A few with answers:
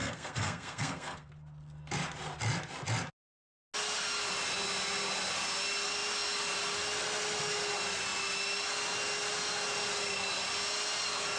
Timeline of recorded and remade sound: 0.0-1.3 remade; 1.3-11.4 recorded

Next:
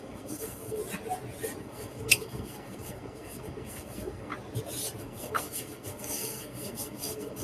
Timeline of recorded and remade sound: 0.0-0.8 remade; 0.8-1.6 recorded; 1.6-4.3 remade; 4.3-5.0 recorded; 5.0-7.4 remade